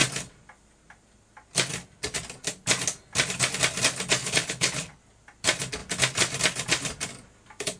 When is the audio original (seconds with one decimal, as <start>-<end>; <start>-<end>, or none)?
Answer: 0.0-4.2; 5.0-7.8